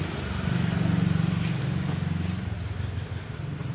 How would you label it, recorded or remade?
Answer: recorded